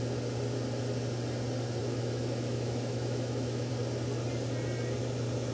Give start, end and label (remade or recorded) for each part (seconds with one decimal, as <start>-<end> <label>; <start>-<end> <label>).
0.0-1.8 recorded; 1.8-3.7 remade; 3.7-5.5 recorded